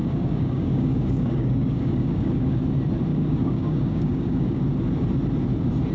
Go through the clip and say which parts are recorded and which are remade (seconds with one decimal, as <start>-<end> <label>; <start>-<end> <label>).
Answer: 0.0-2.6 remade; 2.6-3.1 recorded; 3.1-4.6 remade; 4.6-5.9 recorded